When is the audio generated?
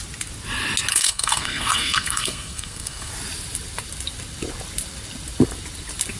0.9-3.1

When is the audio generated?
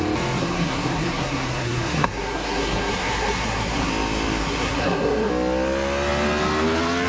0.4-3.9; 4.4-5.3